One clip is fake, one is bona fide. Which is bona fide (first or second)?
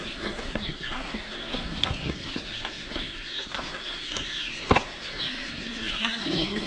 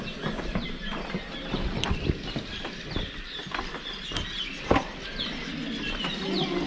second